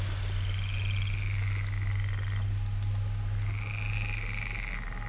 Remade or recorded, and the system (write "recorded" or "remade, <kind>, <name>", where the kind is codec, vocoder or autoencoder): recorded